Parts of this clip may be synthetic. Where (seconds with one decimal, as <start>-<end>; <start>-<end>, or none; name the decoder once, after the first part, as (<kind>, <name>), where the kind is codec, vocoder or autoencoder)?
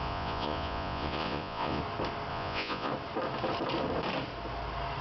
0.0-1.8 (vocoder, Vocos); 2.3-2.9